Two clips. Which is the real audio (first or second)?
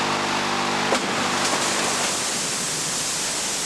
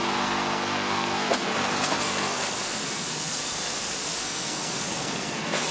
first